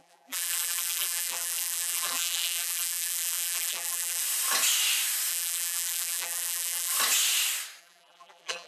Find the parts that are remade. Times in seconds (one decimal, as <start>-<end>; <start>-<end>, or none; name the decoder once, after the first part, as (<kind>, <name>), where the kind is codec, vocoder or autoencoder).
0.0-4.2 (vocoder, BigVGAN v2); 5.3-6.9; 7.8-8.7